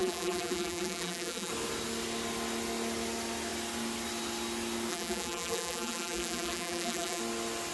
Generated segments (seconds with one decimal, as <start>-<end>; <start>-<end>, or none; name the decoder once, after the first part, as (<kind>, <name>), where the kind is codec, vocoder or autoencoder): 0.0-1.5 (vocoder, BigVGAN v2); 4.9-7.2